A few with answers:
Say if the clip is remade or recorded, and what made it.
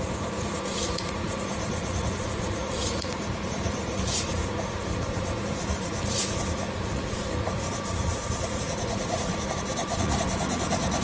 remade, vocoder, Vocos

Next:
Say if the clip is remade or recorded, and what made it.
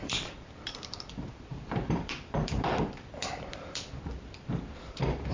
remade, vocoder, BigVGAN v2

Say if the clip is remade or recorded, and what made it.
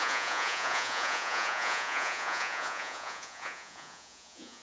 remade, vocoder, Vocos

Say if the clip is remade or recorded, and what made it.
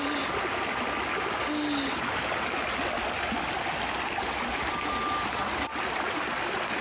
recorded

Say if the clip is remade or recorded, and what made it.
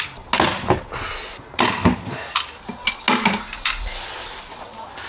recorded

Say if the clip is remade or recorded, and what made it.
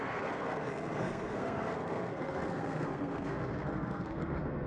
remade, codec, SNAC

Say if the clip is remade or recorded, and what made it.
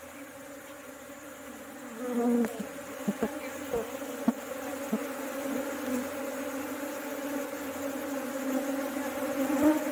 recorded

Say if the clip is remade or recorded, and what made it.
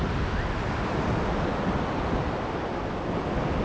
recorded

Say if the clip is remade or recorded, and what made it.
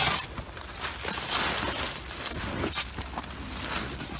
recorded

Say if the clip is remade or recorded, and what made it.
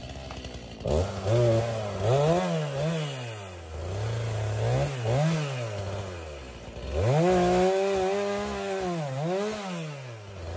recorded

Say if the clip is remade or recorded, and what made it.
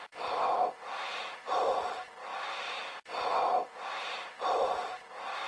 recorded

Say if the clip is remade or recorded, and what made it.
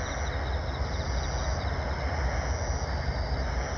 recorded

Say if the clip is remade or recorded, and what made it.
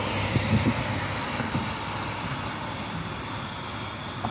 recorded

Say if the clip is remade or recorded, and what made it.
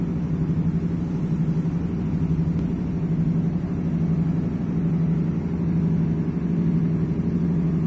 recorded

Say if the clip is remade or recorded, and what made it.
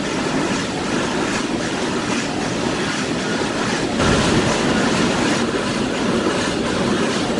recorded